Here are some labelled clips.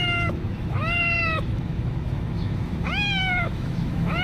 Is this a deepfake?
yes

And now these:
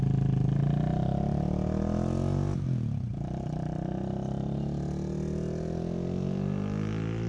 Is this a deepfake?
no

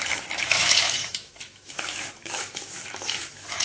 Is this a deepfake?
yes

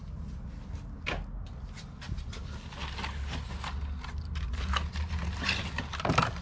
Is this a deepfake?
no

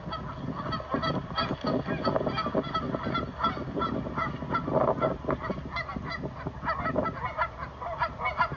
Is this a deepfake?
no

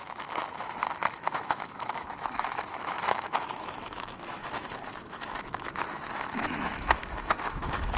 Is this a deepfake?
yes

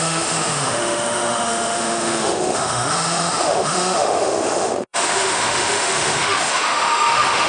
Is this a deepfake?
yes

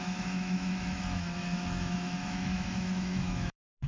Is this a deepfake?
yes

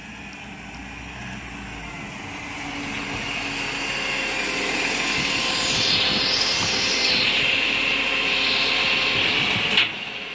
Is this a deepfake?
no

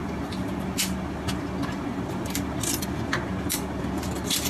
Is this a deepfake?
no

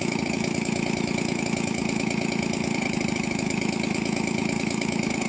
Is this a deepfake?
yes